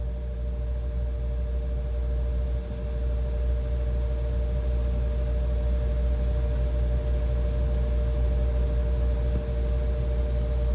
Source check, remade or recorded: recorded